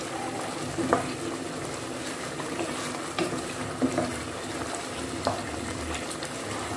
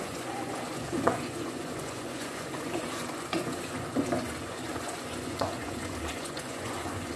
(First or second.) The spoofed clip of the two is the second